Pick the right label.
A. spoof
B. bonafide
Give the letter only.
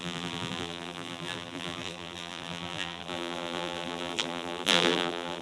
A